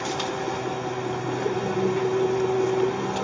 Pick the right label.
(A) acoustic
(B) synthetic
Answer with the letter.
A